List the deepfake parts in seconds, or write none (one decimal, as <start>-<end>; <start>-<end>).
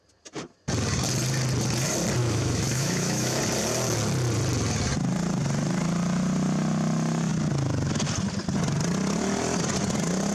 2.2-3.4